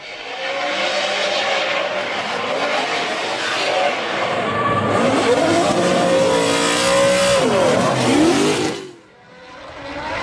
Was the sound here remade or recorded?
recorded